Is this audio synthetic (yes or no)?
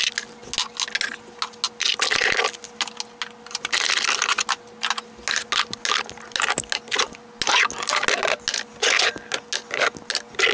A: no